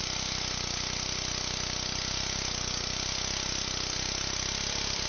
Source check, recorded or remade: recorded